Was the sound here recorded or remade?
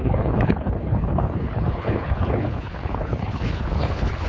remade